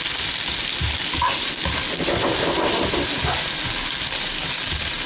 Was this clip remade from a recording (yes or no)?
no